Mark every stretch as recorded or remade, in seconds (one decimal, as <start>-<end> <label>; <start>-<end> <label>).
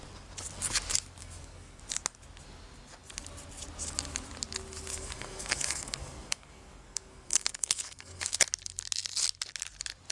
0.0-1.2 recorded; 1.2-1.8 remade; 1.8-4.9 recorded; 4.9-8.4 remade; 8.4-10.1 recorded